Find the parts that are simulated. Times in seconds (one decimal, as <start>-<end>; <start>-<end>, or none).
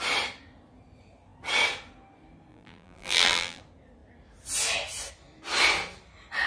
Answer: 2.5-3.6